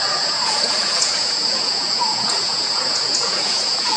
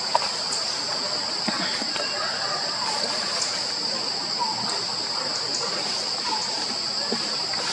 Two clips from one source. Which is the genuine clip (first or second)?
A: second